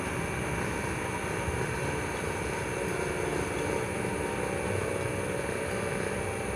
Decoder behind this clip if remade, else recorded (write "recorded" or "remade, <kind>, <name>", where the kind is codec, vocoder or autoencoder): recorded